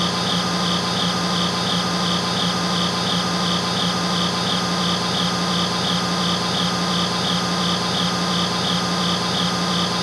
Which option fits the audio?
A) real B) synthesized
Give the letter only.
A